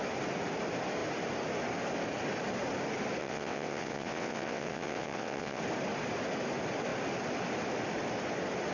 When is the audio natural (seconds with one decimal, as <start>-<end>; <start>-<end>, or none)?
0.0-3.2; 5.6-8.7